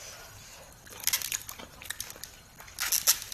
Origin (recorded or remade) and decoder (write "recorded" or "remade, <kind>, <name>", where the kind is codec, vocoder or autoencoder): recorded